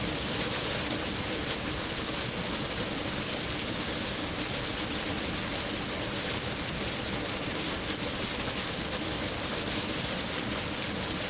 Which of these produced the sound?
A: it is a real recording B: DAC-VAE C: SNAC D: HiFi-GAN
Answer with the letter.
A